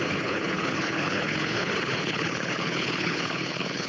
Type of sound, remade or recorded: remade